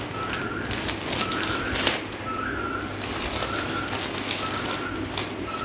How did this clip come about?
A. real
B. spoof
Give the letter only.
A